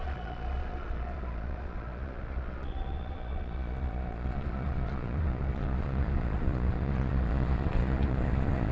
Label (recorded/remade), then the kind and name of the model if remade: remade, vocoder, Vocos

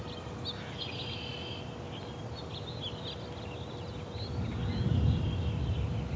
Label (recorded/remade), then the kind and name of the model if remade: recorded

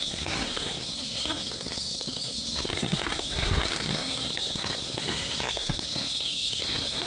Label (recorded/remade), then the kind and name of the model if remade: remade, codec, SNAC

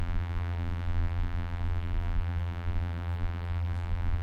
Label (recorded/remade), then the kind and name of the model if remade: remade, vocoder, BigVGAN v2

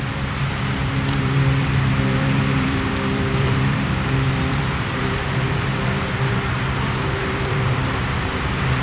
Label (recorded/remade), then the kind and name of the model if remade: remade, vocoder, BigVGAN v2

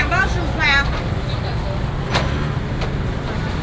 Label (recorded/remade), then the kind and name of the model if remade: recorded